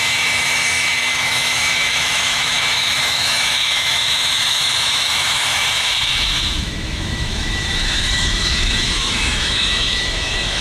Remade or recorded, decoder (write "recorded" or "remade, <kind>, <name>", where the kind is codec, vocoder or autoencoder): remade, autoencoder, DAC-VAE